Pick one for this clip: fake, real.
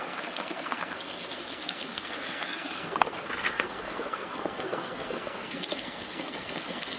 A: fake